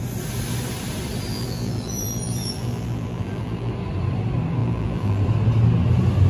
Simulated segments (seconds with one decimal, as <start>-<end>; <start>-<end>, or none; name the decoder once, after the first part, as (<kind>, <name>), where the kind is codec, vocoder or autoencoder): 1.3-3.7 (vocoder, BigVGAN v2); 4.6-5.2

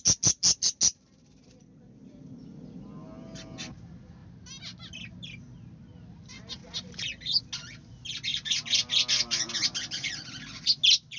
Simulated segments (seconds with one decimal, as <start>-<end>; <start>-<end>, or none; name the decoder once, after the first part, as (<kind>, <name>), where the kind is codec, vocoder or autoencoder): 8.3-8.9 (vocoder, BigVGAN v2)

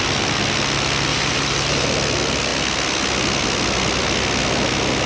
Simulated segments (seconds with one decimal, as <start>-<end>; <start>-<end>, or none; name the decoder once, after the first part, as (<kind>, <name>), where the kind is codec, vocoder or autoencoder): 1.1-1.9 (vocoder, BigVGAN v2)

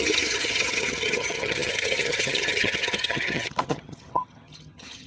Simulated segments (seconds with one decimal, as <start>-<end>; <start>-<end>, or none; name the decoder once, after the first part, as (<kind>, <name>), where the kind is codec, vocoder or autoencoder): 0.0-5.1 (vocoder, HiFi-GAN)

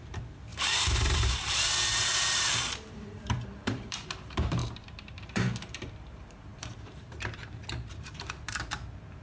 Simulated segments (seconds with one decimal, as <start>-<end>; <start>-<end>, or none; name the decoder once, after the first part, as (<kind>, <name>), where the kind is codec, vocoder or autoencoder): 0.0-9.2 (vocoder, BigVGAN v2)

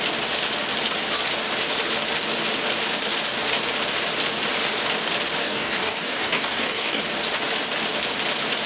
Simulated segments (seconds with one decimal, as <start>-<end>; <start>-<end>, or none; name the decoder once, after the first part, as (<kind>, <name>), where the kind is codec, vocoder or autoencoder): 5.4-7.0 (codec, DAC)

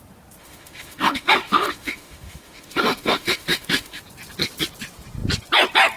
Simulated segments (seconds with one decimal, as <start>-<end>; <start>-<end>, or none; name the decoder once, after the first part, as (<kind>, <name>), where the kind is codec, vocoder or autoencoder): 0.4-4.0 (autoencoder, DAC-VAE)